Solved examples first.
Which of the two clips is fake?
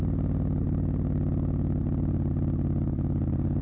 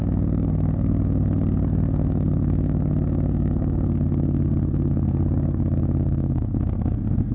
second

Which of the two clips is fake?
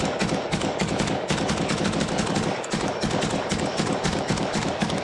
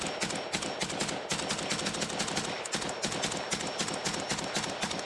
first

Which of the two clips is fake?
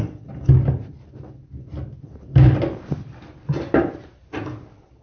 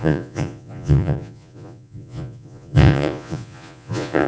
second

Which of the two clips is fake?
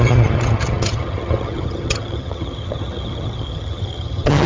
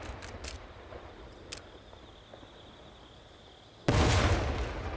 first